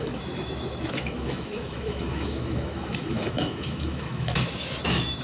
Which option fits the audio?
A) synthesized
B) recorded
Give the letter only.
A